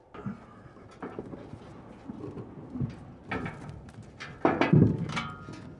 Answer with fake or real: real